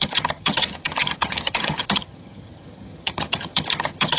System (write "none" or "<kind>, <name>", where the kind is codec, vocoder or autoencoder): vocoder, HiFi-GAN